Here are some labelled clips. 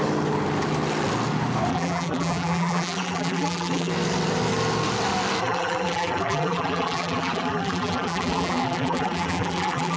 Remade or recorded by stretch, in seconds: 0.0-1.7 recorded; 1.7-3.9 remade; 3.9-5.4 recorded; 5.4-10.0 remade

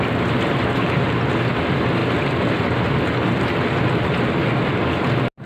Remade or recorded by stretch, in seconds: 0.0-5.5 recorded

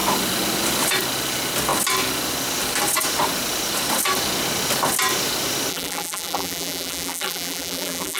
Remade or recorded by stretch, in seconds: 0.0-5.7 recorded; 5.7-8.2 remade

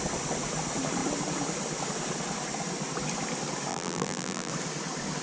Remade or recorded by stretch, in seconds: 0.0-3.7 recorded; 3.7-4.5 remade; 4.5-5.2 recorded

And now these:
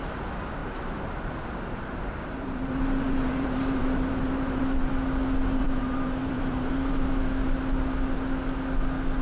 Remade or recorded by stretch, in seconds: 0.0-0.6 recorded; 0.6-4.9 remade; 4.9-5.6 recorded; 5.6-7.1 remade; 7.1-9.2 recorded

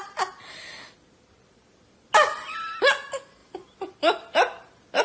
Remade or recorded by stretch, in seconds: 0.0-5.0 recorded